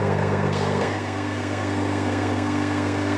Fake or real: fake